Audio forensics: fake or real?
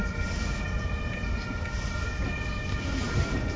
real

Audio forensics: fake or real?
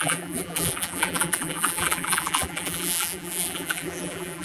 fake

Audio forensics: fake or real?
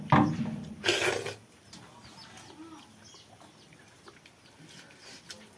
real